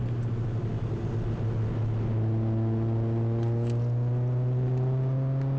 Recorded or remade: recorded